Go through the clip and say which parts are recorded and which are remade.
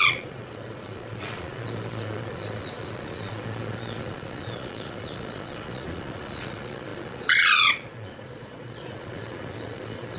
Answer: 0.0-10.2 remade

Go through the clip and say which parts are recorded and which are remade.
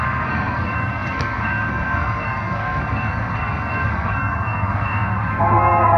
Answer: 0.0-6.0 remade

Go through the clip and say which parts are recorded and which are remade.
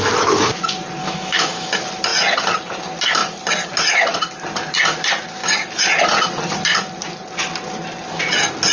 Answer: 0.0-1.0 recorded; 1.0-1.7 remade; 1.7-8.7 recorded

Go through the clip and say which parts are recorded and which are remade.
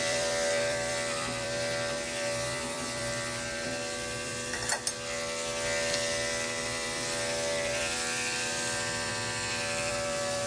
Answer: 0.0-5.5 remade; 5.5-6.6 recorded; 6.6-9.1 remade; 9.1-9.9 recorded; 9.9-10.5 remade